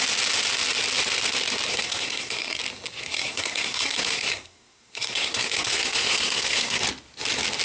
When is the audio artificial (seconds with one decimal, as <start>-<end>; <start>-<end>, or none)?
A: 1.7-2.6; 3.0-6.8